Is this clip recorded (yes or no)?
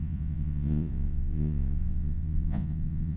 no